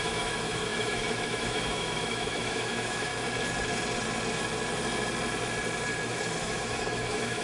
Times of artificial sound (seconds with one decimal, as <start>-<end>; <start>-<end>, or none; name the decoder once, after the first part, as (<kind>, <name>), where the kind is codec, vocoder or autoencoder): 0.0-3.1 (autoencoder, DAC-VAE); 6.4-7.4